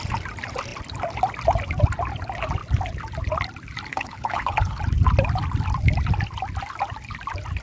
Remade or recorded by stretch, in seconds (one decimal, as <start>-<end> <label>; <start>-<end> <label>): 0.0-3.9 recorded; 3.9-4.8 remade; 4.8-7.6 recorded

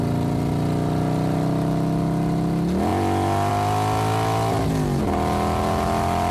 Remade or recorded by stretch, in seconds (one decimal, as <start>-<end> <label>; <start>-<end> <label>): 0.0-6.3 recorded